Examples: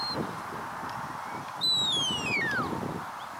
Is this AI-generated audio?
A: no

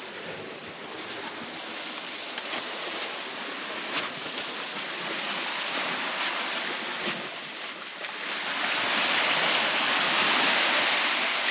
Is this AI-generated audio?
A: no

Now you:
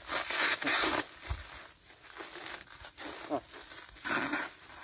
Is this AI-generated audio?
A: no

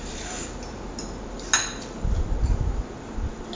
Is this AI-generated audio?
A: no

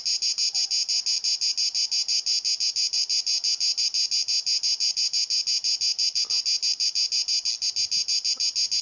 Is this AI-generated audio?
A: no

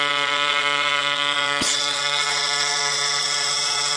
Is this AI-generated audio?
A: yes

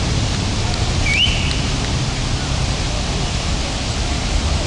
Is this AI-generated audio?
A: no